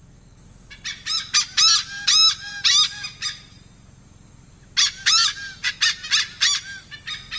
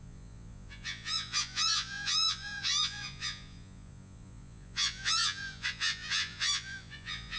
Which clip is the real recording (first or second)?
first